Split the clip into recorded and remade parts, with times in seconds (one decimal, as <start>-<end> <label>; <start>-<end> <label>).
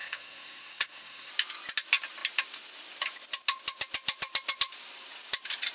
0.0-1.3 remade; 1.3-5.7 recorded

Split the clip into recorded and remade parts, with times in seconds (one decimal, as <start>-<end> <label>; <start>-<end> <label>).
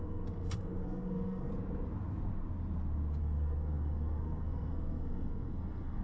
0.0-1.5 remade; 1.5-3.2 recorded; 3.2-6.0 remade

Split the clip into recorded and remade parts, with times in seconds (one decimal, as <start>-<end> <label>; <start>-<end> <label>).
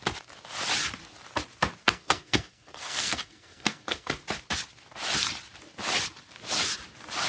0.0-1.8 recorded; 1.8-4.1 remade; 4.1-7.3 recorded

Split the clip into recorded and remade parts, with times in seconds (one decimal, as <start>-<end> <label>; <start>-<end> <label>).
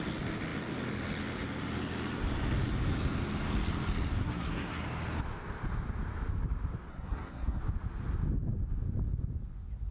0.0-4.2 recorded; 4.2-4.8 remade; 4.8-6.9 recorded; 6.9-7.6 remade; 7.6-9.9 recorded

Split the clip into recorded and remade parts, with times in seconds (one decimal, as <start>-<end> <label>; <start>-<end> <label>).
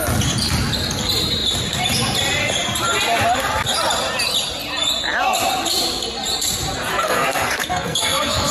0.0-6.9 recorded; 6.9-8.5 remade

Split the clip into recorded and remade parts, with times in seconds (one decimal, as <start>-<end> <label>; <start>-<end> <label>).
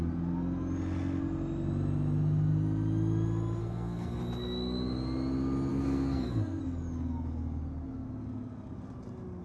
0.0-3.6 recorded; 3.6-4.2 remade; 4.2-5.7 recorded; 5.7-6.6 remade; 6.6-9.4 recorded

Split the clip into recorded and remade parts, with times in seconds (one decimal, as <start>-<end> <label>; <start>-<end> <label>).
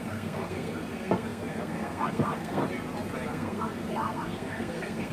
0.0-2.6 remade; 2.6-3.3 recorded; 3.3-5.1 remade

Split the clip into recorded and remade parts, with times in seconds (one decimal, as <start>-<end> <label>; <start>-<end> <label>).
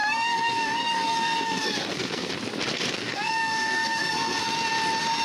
0.0-2.3 remade; 2.3-2.7 recorded; 2.7-4.4 remade; 4.4-5.2 recorded